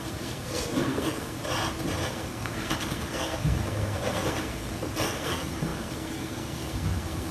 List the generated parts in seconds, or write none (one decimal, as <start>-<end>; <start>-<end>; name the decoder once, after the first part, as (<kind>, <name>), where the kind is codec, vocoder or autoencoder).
0.0-1.4 (codec, SNAC); 2.1-7.3

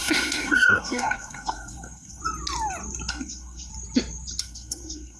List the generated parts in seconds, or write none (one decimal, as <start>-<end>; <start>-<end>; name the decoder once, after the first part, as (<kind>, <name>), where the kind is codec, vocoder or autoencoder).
0.0-2.2 (codec, SNAC); 3.1-3.7; 4.4-5.2